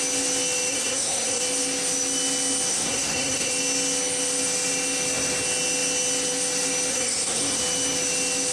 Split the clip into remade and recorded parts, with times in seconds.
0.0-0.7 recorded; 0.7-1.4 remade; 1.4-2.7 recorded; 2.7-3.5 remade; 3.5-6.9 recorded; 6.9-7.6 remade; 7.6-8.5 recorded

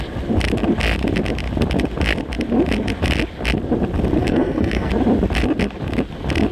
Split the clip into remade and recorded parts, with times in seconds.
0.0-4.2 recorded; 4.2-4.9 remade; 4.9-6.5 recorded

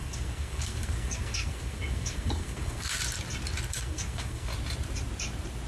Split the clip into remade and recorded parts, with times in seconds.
0.0-3.0 remade; 3.0-3.7 recorded; 3.7-4.5 remade; 4.5-5.7 recorded

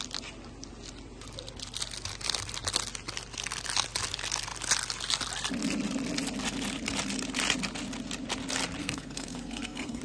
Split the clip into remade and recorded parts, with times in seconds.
0.0-8.8 recorded; 8.8-10.0 remade

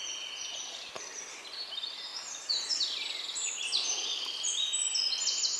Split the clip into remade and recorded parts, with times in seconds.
0.0-5.6 recorded